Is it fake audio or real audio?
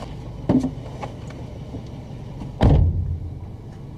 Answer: real